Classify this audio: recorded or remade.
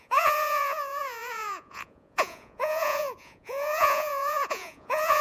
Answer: remade